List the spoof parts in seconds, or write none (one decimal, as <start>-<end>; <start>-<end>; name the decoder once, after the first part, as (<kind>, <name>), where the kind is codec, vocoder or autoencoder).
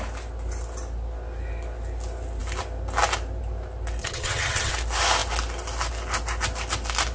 4.0-4.7 (vocoder, HiFi-GAN)